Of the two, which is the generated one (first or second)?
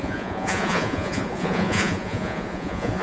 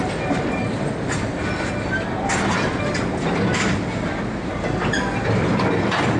first